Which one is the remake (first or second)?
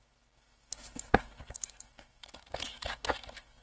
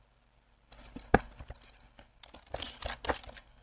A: first